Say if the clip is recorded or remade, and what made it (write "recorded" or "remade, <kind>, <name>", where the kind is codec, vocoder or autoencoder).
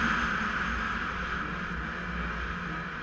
recorded